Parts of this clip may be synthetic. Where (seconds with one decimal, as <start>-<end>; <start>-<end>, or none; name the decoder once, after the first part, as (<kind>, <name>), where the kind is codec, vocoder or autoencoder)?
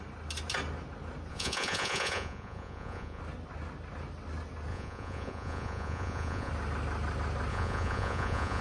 1.3-3.2 (vocoder, Vocos); 4.7-6.5; 7.5-8.6